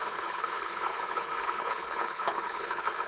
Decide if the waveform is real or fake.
fake